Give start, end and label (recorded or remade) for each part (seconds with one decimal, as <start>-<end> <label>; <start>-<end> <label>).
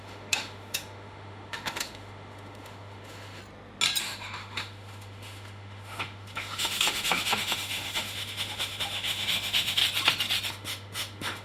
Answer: 0.0-3.4 remade; 3.4-4.0 recorded; 4.0-9.8 remade; 9.8-10.5 recorded; 10.5-11.4 remade